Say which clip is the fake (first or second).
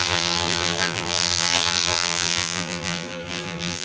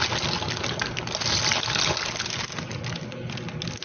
first